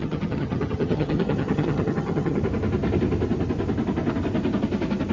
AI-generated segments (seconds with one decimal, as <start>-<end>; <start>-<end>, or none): 0.0-2.4